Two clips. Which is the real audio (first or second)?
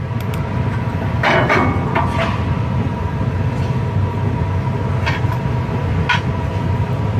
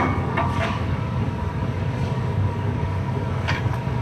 first